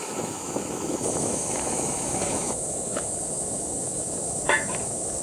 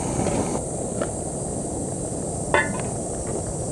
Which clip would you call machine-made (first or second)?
first